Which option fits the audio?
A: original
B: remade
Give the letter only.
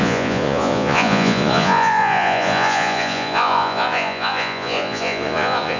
B